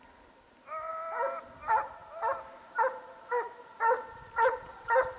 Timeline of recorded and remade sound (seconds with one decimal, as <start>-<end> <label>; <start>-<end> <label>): 0.0-5.2 recorded